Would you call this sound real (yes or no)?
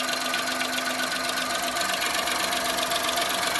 yes